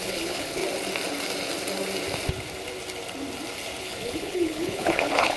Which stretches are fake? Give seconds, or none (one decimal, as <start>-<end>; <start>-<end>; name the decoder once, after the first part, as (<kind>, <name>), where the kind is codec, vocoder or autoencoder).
0.0-0.6 (codec, HILCodec); 3.8-5.4